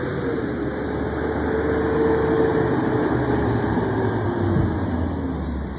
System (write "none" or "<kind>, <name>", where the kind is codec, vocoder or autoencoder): none